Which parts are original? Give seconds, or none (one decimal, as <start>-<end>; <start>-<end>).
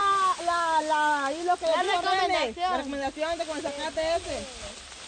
0.0-5.1